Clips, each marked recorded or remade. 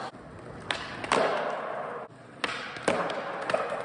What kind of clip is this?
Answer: recorded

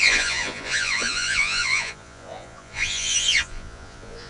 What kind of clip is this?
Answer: remade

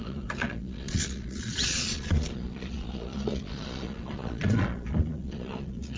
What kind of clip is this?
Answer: remade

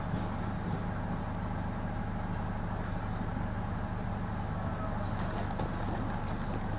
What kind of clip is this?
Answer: recorded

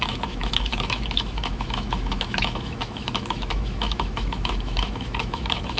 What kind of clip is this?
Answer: remade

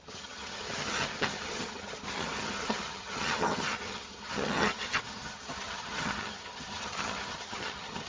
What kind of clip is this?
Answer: remade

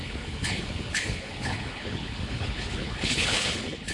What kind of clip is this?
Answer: remade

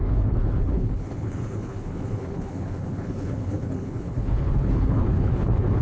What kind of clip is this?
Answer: remade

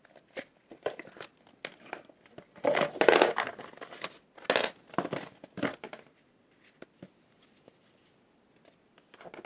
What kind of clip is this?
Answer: recorded